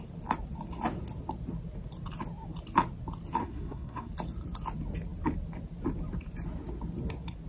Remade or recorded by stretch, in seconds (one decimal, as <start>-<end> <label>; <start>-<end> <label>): 0.0-3.4 recorded; 3.4-4.1 remade; 4.1-7.5 recorded